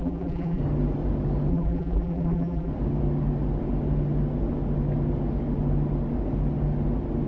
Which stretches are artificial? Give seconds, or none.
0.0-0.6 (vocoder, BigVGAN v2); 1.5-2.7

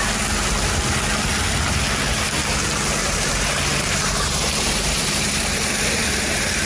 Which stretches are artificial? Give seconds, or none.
3.0-6.7 (vocoder, BigVGAN v2)

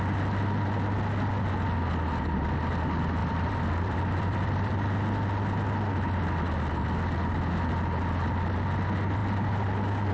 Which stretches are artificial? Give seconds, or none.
3.2-4.7 (vocoder, BigVGAN v2)

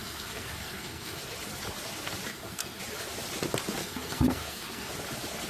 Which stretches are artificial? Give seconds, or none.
0.0-1.2 (codec, SNAC); 2.3-2.8; 3.8-4.9